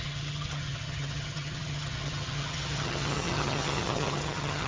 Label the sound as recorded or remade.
remade